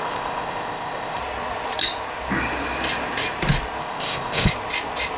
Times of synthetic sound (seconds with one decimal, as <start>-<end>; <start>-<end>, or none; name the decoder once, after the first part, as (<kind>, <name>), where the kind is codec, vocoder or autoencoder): 0.0-1.2 (codec, ZipCodec); 3.8-4.5